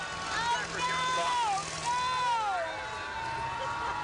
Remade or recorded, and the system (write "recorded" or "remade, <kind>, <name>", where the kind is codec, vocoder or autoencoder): recorded